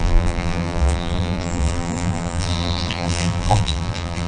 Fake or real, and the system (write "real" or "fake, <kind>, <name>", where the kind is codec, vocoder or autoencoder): fake, vocoder, BigVGAN v2